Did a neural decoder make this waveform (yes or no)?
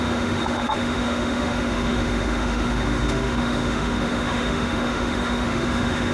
yes